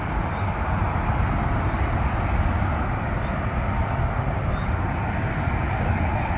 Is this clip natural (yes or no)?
yes